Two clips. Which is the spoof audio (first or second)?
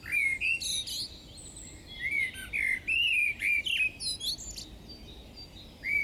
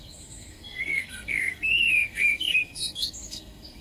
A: second